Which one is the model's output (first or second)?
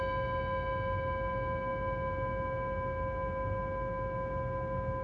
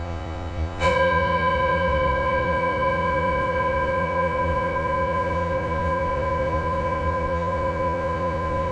second